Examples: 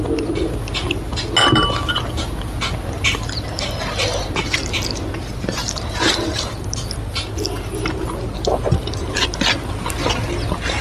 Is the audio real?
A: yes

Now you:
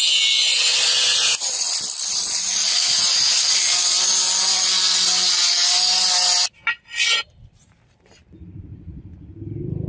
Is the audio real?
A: no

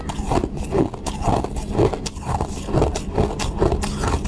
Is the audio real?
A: yes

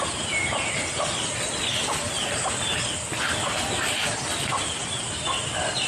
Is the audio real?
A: yes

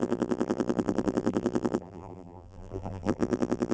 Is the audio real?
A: no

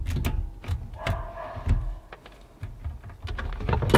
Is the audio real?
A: yes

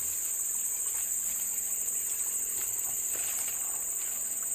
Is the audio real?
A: yes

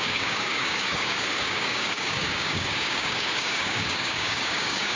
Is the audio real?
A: no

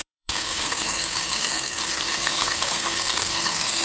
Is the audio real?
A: no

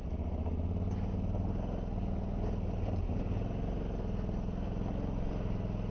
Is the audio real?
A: yes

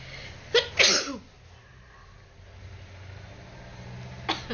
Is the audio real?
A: yes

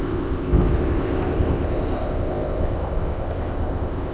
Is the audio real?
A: no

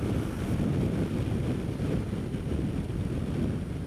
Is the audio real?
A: yes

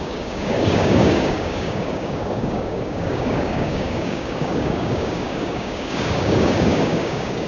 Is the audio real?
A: no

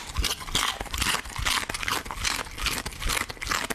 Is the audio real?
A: yes